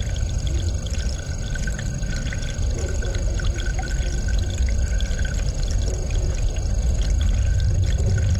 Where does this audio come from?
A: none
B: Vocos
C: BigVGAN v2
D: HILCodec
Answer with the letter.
A